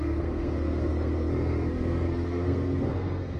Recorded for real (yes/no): no